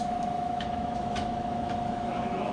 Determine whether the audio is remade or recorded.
remade